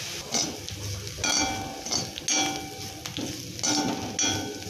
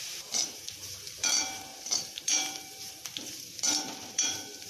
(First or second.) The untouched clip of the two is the first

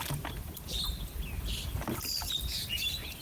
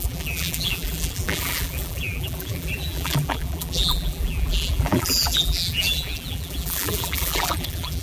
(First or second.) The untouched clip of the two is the first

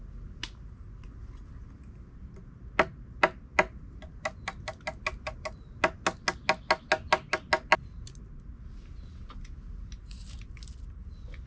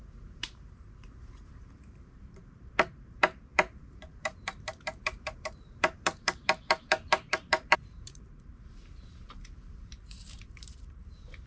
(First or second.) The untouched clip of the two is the first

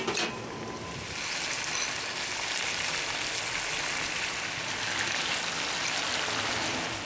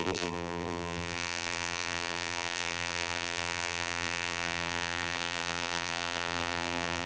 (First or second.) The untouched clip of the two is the first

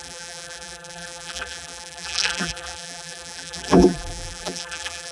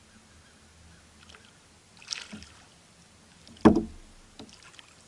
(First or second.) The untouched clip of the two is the second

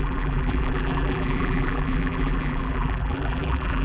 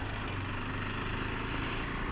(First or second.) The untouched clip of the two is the second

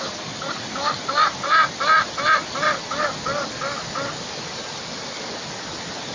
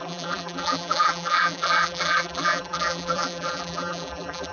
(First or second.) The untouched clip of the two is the first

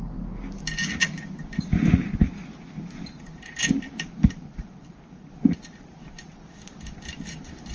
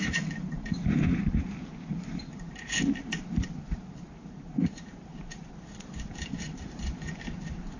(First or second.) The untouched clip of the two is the first